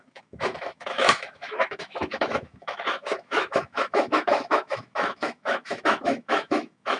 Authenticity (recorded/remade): remade